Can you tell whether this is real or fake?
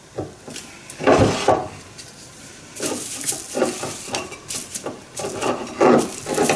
real